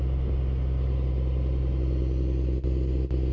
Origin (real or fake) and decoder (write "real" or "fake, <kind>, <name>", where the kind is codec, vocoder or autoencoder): real